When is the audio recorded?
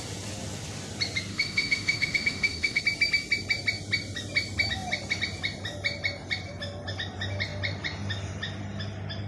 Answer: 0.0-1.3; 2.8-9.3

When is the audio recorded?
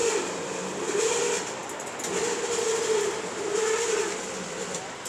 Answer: 0.0-5.1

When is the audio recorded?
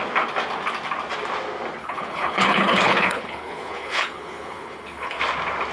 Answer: 0.0-1.8; 5.2-5.7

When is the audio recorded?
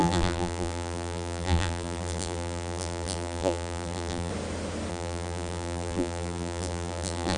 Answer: 4.3-4.9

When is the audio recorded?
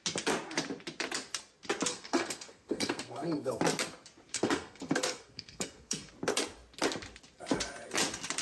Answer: 0.0-1.9; 3.6-4.3; 6.1-8.4